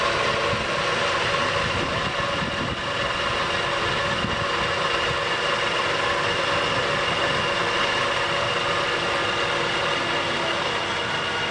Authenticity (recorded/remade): recorded